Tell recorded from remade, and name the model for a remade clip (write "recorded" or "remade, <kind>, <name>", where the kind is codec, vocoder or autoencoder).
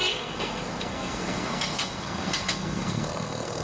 remade, codec, SNAC